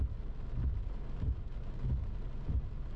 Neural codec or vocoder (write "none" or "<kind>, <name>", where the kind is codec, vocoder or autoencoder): none